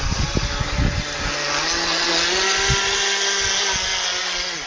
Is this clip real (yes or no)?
yes